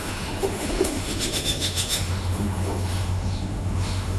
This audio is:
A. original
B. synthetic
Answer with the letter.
B